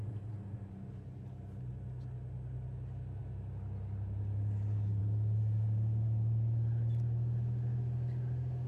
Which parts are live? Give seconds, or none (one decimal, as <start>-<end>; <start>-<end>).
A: 0.0-8.7